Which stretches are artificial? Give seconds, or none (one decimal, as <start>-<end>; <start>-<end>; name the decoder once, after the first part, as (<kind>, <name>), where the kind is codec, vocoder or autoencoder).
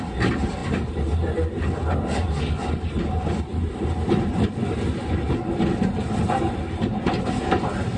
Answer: none